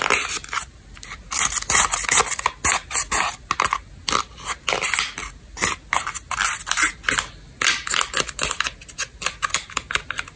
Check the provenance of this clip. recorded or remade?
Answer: recorded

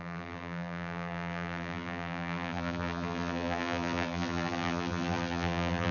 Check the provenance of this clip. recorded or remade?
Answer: remade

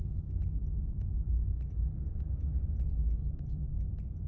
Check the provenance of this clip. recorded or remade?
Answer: recorded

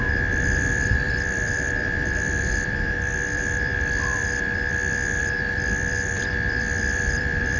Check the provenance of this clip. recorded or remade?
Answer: remade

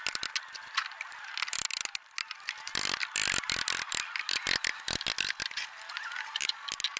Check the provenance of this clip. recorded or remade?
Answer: recorded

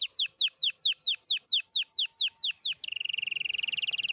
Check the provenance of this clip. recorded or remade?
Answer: recorded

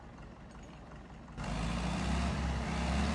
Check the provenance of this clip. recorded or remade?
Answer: recorded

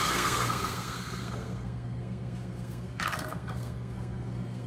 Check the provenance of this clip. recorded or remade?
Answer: remade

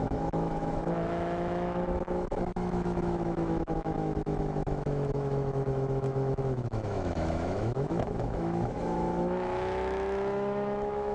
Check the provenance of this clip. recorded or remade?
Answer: remade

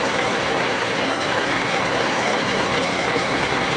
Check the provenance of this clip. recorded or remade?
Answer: remade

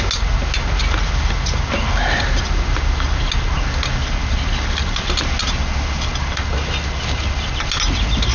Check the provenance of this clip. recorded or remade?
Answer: recorded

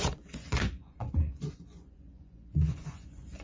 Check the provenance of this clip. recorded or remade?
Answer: remade